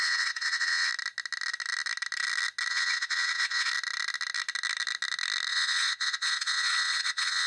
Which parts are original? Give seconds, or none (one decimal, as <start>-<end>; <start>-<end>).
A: 0.9-2.7; 3.7-5.5